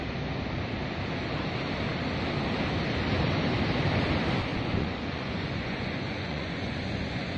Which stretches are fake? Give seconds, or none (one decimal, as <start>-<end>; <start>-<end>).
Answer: 4.5-7.4